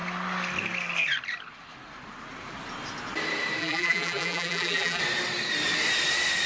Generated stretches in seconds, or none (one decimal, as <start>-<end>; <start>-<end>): 3.6-5.0